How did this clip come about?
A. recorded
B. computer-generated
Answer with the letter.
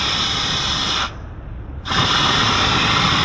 A